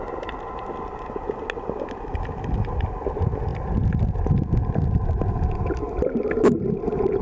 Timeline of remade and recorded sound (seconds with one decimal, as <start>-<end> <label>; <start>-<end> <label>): 0.0-7.2 recorded